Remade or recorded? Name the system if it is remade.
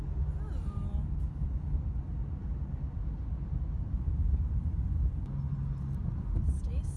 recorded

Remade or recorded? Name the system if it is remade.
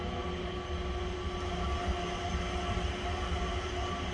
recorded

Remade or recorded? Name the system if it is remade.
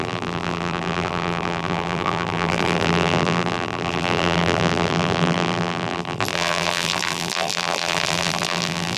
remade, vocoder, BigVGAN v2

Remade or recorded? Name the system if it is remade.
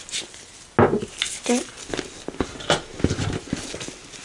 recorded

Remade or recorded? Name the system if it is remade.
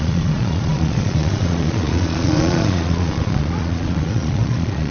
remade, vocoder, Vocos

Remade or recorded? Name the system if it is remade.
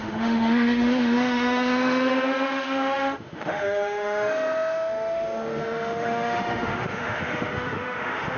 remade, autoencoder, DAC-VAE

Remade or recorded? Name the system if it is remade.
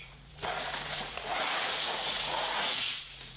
remade, vocoder, Vocos